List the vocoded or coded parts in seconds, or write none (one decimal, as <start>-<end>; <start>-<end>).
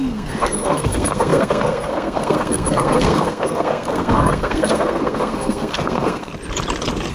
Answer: 0.0-6.3